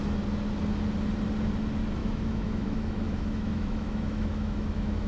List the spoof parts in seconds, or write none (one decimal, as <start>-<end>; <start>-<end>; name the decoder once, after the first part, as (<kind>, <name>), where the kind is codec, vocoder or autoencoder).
2.0-5.1 (autoencoder, DAC-VAE)